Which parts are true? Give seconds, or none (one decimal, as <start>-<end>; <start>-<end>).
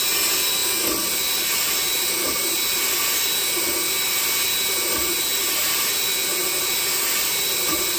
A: 0.0-8.0